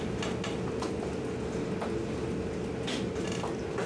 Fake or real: real